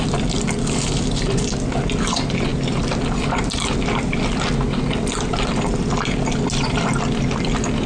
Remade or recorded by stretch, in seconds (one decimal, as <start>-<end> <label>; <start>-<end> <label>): 0.0-7.9 recorded